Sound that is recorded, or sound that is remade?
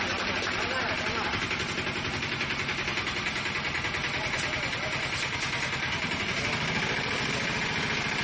recorded